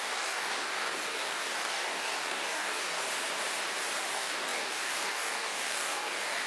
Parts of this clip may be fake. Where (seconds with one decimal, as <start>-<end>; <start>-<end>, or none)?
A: 0.0-3.1; 4.1-6.5